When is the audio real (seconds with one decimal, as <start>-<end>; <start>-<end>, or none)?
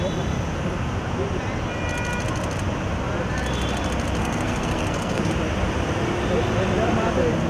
0.0-4.2; 5.3-7.5